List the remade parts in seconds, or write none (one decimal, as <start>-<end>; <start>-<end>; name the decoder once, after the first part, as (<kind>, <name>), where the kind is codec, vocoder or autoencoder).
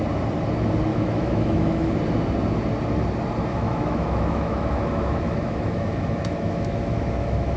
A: 0.9-1.9 (autoencoder, DAC-VAE); 3.5-7.6